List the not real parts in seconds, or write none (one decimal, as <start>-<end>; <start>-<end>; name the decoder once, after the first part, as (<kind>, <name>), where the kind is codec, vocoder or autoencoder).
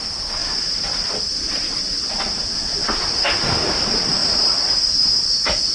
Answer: 0.0-5.7 (vocoder, BigVGAN v2)